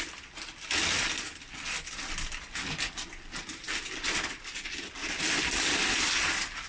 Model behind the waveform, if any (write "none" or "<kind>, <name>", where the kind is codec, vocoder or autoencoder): none